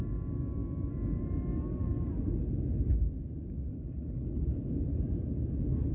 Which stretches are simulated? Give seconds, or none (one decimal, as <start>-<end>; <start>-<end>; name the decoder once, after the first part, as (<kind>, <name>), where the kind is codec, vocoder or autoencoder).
3.7-4.7 (codec, HILCodec)